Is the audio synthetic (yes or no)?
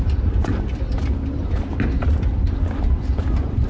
no